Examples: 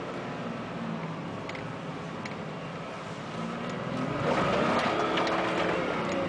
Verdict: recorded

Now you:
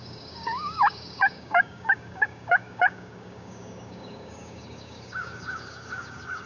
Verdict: remade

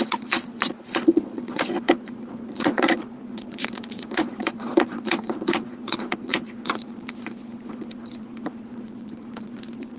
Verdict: remade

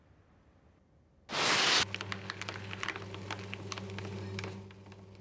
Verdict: recorded